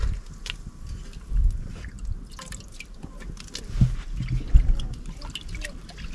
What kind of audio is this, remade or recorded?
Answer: recorded